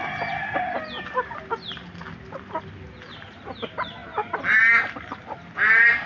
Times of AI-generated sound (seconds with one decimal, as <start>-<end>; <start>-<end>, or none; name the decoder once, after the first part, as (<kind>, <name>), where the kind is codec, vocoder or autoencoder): none